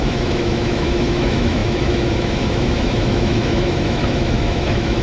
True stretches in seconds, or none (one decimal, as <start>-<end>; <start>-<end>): none